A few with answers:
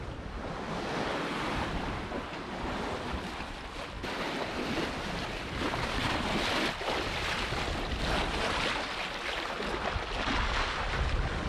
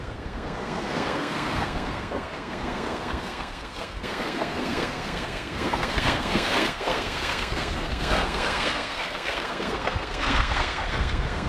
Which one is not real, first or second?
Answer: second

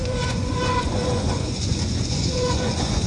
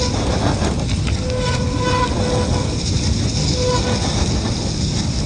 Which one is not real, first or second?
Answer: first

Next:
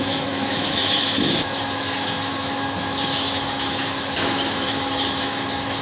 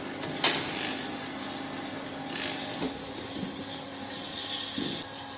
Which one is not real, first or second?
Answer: first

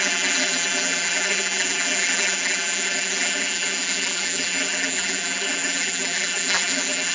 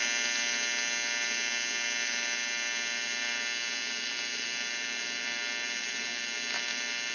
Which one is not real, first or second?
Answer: first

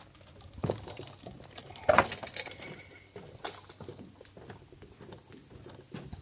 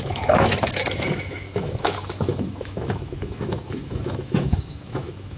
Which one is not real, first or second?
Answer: second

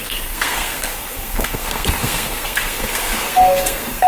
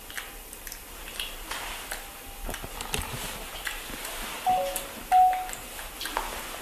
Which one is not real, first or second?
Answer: first